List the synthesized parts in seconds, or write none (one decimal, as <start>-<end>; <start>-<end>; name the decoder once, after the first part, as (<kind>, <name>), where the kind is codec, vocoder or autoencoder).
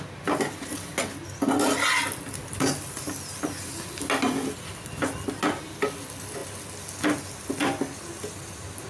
none